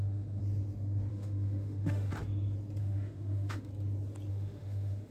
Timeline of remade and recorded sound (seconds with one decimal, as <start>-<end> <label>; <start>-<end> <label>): 0.0-0.4 remade; 0.4-1.1 recorded; 1.1-2.1 remade; 2.1-2.8 recorded; 2.8-3.7 remade; 3.7-4.3 recorded; 4.3-5.1 remade